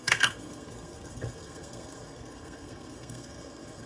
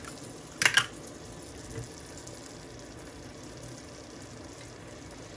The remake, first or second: first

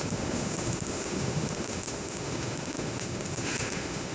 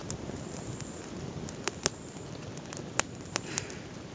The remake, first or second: first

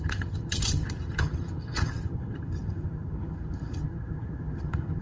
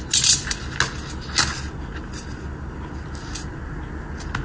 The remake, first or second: first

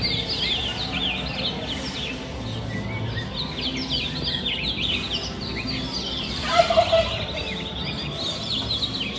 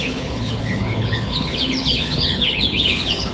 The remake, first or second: second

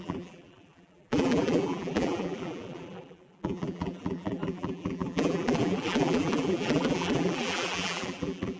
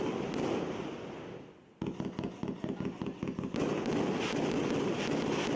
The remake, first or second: first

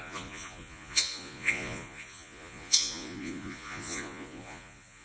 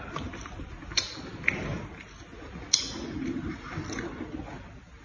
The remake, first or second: first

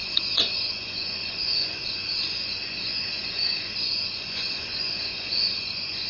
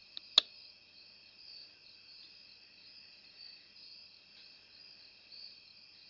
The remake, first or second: first